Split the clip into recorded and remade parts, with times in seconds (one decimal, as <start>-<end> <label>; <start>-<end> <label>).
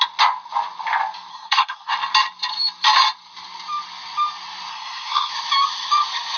0.0-1.3 recorded; 1.3-1.9 remade; 1.9-4.7 recorded; 4.7-5.3 remade; 5.3-6.4 recorded